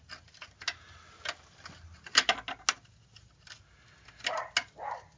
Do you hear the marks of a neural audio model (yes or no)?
no